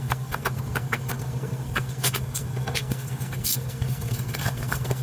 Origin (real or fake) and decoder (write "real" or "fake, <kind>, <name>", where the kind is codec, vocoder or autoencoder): fake, codec, SNAC